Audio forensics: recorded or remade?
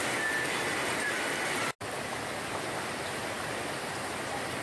recorded